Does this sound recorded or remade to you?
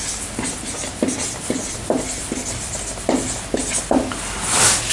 recorded